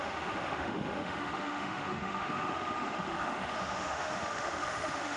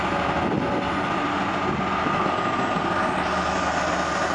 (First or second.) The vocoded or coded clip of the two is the first